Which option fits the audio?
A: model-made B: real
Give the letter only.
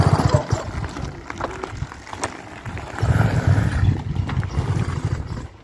B